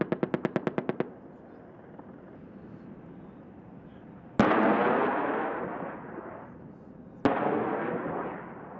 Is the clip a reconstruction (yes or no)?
no